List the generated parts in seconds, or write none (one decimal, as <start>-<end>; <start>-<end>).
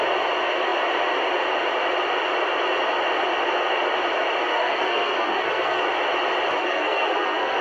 4.5-5.8; 6.6-7.6